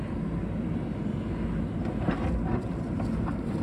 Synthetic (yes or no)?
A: no